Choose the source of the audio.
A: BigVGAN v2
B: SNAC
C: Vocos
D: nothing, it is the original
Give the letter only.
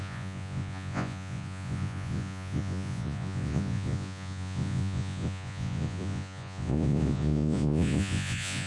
C